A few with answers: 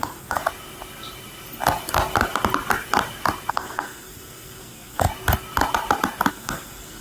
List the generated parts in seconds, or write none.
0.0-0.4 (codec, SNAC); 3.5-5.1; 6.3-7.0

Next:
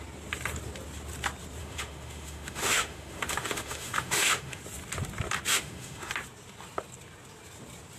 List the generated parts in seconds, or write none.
1.6-4.6 (autoencoder, DAC-VAE); 5.5-6.1

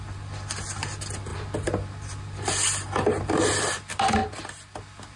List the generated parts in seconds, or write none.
none

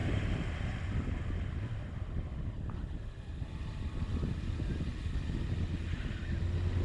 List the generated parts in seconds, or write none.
0.0-1.2 (vocoder, BigVGAN v2)

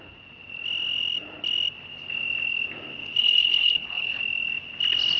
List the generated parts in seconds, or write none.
3.2-4.2 (codec, HILCodec)

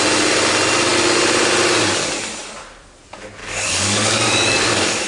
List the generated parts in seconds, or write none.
3.4-5.1 (codec, DAC)

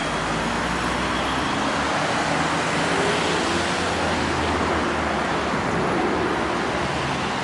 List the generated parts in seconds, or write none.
none

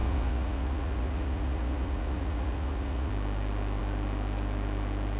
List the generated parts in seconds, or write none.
0.0-3.1 (vocoder, Vocos)